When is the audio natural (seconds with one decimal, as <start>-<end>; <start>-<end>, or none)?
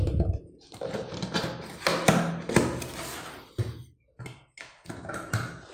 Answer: 0.0-5.7